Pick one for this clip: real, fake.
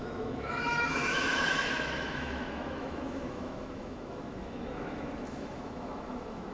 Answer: fake